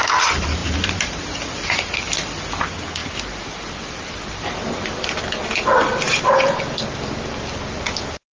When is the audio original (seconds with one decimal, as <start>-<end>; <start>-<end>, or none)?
0.0-3.0; 5.0-8.3